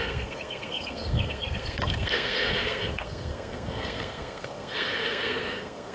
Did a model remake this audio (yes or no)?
yes